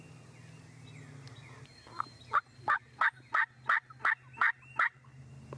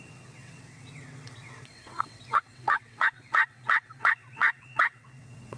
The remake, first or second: second